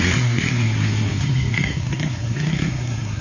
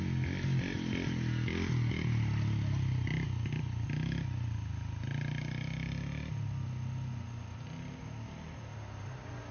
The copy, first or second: first